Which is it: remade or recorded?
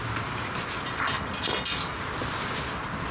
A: recorded